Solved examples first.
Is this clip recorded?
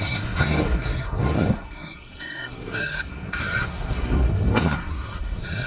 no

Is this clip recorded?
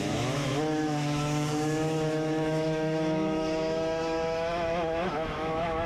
no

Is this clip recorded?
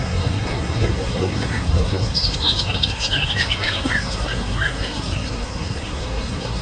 no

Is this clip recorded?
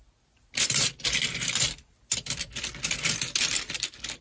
yes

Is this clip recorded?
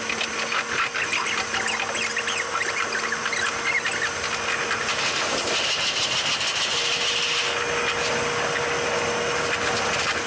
yes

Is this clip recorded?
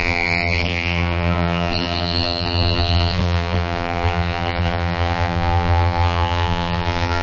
no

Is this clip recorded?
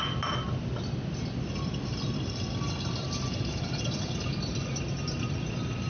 yes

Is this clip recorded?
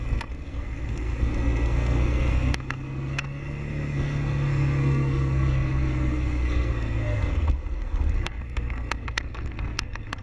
no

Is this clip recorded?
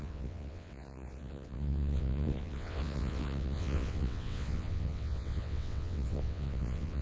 no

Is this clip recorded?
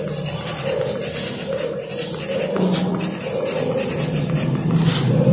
yes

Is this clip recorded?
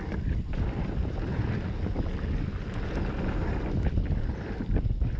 yes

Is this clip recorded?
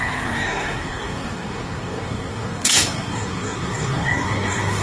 no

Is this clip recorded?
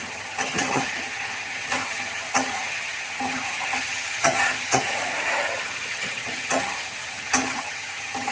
no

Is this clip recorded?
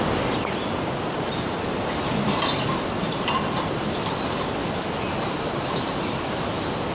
yes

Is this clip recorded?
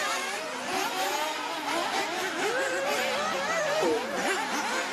yes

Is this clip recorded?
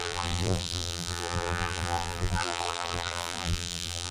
no